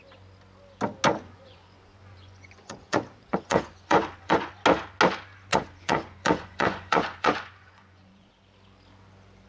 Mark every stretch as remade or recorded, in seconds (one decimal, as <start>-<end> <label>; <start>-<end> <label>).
0.0-1.1 recorded; 1.1-4.5 remade; 4.5-5.5 recorded; 5.5-8.3 remade; 8.3-9.5 recorded